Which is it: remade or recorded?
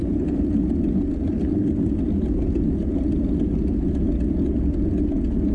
recorded